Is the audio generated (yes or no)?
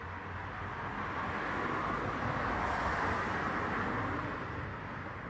no